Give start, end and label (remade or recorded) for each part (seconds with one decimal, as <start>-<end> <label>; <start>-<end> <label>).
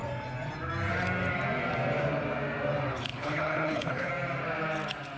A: 0.0-3.1 recorded; 3.1-4.1 remade; 4.1-5.2 recorded